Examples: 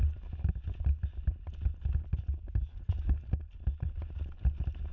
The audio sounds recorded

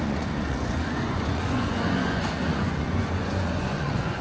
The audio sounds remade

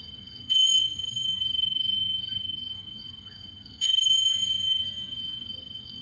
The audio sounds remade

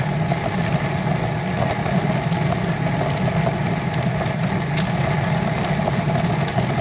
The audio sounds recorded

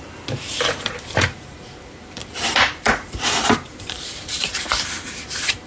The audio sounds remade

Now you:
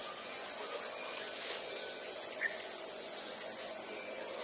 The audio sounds remade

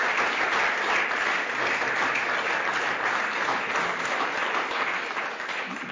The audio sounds recorded